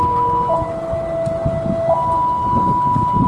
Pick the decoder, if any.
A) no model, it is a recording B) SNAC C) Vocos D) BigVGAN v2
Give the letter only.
A